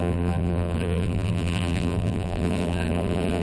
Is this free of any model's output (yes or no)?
no